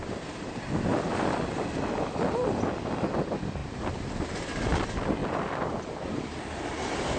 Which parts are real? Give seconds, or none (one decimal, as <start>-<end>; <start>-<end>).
0.0-3.6; 4.1-7.2